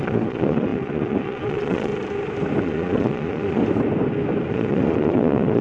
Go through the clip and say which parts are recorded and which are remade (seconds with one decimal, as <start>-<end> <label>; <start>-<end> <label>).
0.0-1.9 remade; 1.9-2.6 recorded; 2.6-3.6 remade; 3.6-4.5 recorded; 4.5-5.6 remade